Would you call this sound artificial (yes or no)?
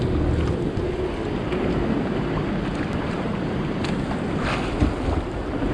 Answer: no